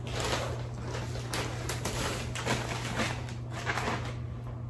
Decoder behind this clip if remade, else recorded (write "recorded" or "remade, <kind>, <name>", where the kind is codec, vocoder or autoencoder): recorded